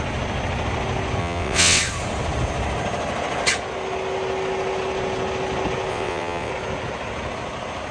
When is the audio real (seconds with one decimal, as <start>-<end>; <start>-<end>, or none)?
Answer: 0.0-1.2; 1.8-5.9; 6.5-7.9